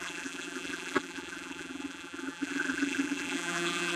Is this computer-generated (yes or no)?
yes